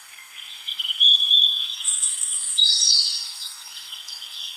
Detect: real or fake fake